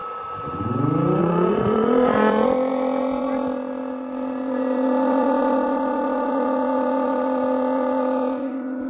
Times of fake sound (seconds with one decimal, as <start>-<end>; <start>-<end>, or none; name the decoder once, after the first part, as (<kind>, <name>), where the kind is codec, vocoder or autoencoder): 1.2-8.9 (vocoder, Vocos)